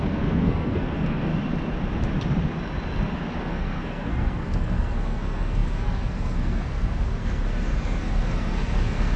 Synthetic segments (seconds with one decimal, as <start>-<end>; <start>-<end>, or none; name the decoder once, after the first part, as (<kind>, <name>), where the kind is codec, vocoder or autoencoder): 0.0-1.3 (codec, SNAC); 3.4-9.2